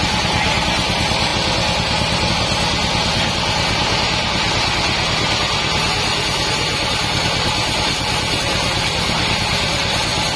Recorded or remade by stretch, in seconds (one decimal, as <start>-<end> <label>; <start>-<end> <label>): 0.0-10.4 recorded